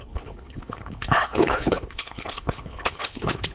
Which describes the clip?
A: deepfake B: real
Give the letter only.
A